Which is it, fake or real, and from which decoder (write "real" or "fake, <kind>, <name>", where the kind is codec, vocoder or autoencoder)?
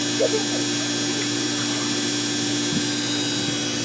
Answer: real